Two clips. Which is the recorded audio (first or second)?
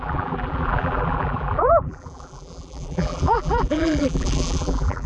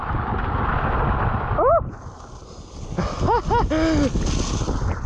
second